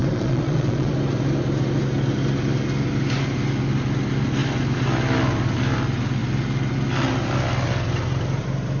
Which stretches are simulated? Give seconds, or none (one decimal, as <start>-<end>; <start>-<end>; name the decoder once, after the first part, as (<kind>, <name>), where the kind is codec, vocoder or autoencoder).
0.0-0.9 (vocoder, Vocos)